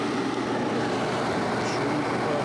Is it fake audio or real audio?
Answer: real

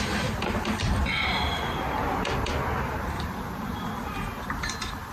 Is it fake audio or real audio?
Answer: real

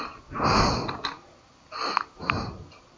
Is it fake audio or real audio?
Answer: real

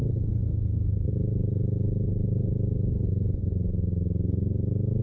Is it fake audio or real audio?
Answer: real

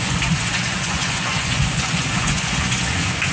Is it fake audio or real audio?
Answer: fake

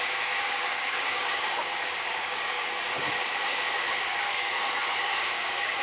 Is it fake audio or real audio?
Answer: fake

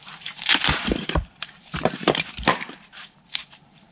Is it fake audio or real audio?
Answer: fake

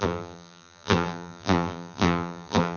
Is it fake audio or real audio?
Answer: fake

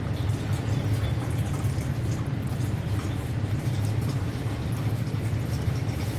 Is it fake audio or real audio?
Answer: real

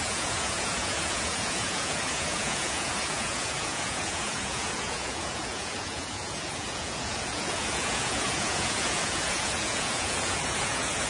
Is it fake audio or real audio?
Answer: fake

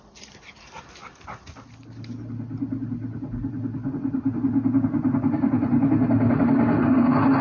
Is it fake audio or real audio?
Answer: real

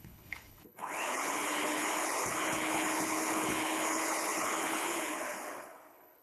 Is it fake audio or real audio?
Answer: fake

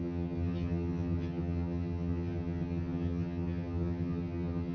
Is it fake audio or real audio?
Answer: fake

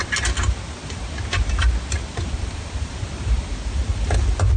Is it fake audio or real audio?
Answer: real